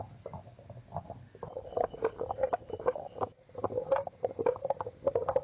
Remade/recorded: recorded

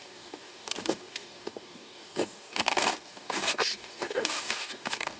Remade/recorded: remade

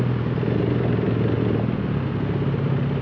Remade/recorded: recorded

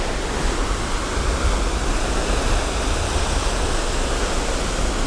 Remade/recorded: recorded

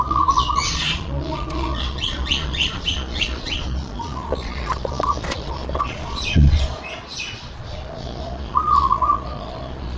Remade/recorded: remade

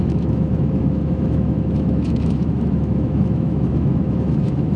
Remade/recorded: remade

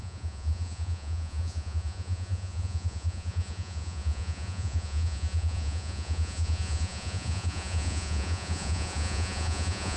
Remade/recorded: remade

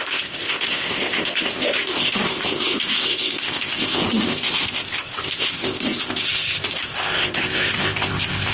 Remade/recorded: remade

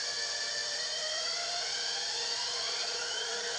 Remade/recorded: remade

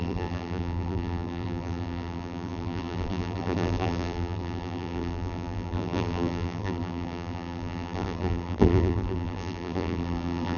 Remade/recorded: remade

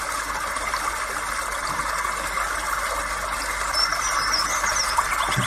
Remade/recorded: recorded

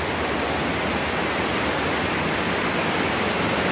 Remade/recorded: recorded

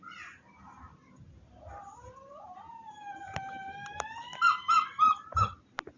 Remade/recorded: recorded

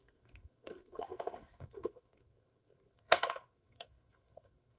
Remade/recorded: remade